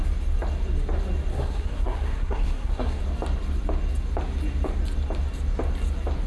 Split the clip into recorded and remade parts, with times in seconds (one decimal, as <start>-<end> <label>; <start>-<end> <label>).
0.0-1.3 recorded; 1.3-3.0 remade; 3.0-6.3 recorded